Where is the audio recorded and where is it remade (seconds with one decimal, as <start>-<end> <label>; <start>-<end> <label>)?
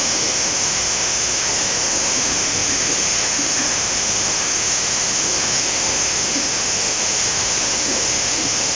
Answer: 0.0-8.7 remade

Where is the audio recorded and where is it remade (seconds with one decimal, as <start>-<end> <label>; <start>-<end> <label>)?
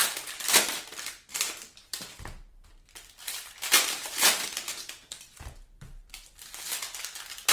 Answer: 0.0-0.5 remade; 0.5-1.3 recorded; 1.3-2.7 remade; 2.7-4.0 recorded; 4.0-6.3 remade; 6.3-7.5 recorded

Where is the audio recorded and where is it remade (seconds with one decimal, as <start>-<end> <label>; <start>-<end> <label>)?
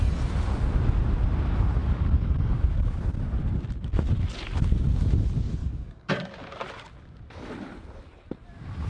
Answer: 0.0-1.8 recorded; 1.8-3.0 remade; 3.0-5.6 recorded; 5.6-6.2 remade; 6.2-8.9 recorded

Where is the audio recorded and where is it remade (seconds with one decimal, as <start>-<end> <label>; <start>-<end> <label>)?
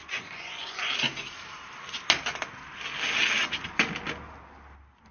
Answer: 0.0-0.9 remade; 0.9-5.1 recorded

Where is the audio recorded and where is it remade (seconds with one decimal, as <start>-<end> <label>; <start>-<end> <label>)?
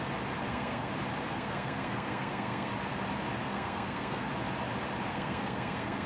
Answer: 0.0-0.4 recorded; 0.4-0.9 remade; 0.9-1.3 recorded; 1.3-2.7 remade; 2.7-3.4 recorded; 3.4-4.3 remade; 4.3-5.1 recorded; 5.1-6.1 remade